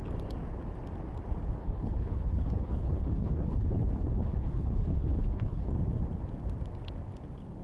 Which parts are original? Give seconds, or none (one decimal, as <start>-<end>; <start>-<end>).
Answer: 0.0-1.6; 5.7-7.6